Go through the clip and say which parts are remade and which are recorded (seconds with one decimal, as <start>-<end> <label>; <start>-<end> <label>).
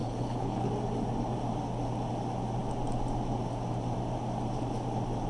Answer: 0.0-0.7 remade; 0.7-5.3 recorded